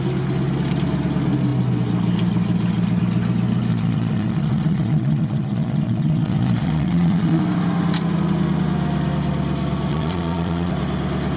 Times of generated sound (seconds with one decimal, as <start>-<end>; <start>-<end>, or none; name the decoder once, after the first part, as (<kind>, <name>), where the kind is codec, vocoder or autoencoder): 3.7-7.4 (vocoder, Vocos); 9.9-10.7